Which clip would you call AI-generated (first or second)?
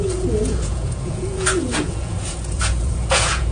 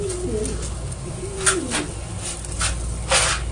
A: first